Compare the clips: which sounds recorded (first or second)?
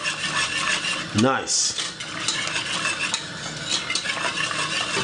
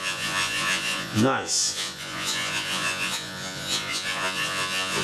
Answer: first